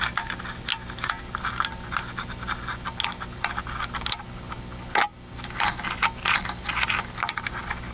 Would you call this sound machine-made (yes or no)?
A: no